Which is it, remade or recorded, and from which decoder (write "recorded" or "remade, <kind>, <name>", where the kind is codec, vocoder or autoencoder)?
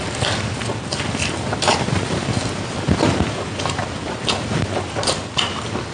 remade, vocoder, BigVGAN v2